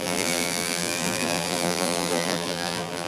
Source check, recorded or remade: remade